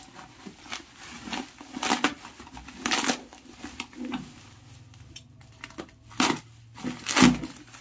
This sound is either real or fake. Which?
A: real